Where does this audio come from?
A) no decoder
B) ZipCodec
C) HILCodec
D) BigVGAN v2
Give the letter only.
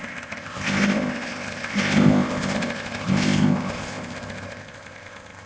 B